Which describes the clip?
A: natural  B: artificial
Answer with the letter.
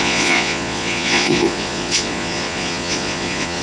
B